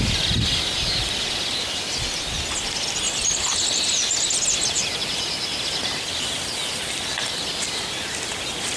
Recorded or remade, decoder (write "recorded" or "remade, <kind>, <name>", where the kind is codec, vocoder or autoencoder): recorded